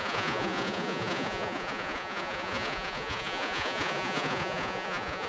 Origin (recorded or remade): remade